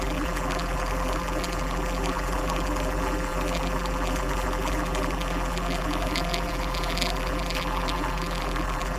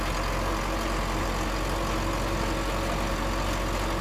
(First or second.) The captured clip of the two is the second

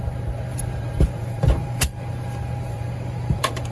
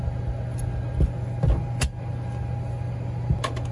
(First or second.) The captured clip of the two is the second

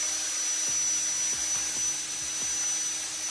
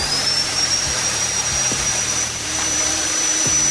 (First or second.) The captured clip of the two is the first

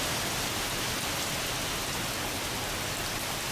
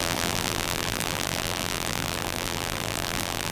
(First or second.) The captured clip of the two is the first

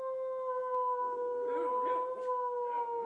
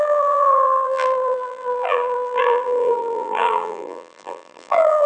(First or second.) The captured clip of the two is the first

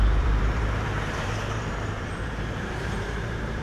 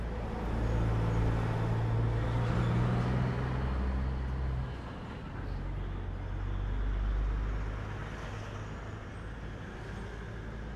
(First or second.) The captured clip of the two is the second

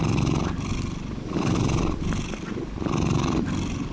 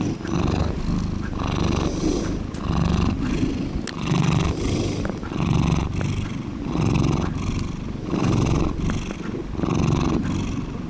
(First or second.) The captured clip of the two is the second